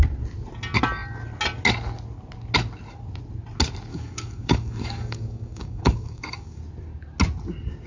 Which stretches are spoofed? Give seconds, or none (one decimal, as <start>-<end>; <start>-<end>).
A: 3.9-6.6